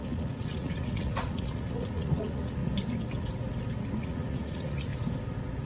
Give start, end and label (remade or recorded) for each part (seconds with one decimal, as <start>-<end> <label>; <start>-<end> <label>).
0.0-2.6 remade; 2.6-4.0 recorded; 4.0-4.9 remade; 4.9-5.7 recorded